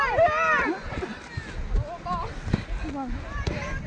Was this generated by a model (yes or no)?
no